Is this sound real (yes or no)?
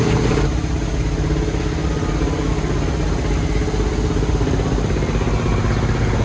yes